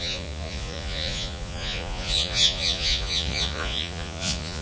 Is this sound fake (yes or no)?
yes